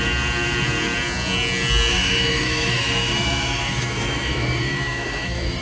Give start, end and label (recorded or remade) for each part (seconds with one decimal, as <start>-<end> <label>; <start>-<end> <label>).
0.0-1.9 recorded; 1.9-5.6 remade